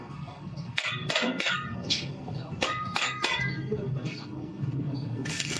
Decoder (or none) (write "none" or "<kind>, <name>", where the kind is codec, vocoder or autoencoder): codec, SNAC